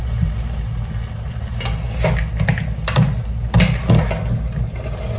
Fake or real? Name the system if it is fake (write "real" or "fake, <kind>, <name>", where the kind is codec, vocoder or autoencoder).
real